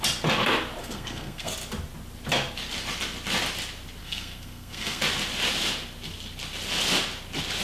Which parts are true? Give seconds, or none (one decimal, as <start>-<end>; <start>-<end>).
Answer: 0.0-0.8; 1.5-4.0; 5.0-7.6